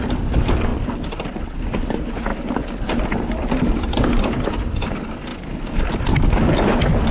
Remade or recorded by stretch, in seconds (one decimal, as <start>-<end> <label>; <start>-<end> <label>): 0.0-7.1 recorded